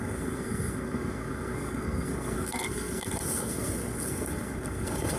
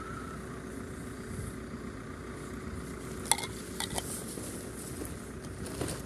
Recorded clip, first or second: second